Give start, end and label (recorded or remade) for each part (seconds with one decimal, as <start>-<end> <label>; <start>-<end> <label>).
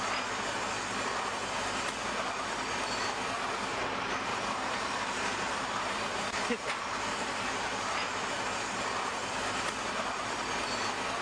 0.0-4.3 recorded; 4.3-8.8 remade; 8.8-11.2 recorded